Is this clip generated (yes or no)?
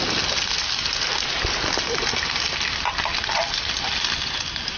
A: no